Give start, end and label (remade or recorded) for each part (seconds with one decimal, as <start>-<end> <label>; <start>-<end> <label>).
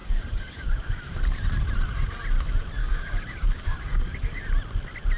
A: 0.0-1.0 remade; 1.0-2.8 recorded; 2.8-4.4 remade; 4.4-5.2 recorded